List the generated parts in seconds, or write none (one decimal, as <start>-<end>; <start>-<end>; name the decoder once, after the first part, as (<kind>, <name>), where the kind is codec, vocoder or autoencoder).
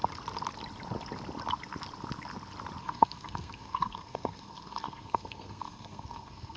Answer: 2.8-6.6 (codec, SNAC)